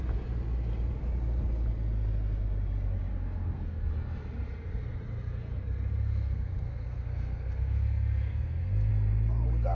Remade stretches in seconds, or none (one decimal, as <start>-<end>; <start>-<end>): 3.1-3.9; 6.0-8.9